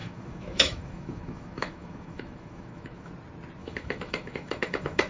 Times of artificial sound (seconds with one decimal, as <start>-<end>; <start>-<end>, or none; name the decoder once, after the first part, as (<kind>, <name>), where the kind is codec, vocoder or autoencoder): 0.0-3.1 (autoencoder, DAC-VAE); 3.6-5.1